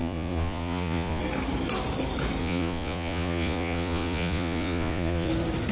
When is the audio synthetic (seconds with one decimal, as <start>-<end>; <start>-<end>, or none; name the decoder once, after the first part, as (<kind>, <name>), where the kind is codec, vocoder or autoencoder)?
0.0-1.2 (vocoder, Vocos); 2.4-5.3